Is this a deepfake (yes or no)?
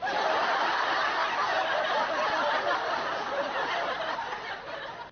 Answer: no